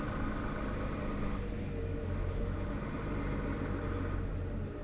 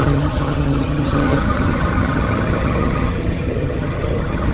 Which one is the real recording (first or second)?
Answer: first